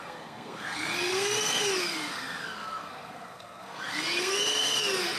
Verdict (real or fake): fake